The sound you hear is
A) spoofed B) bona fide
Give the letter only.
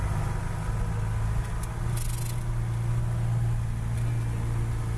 B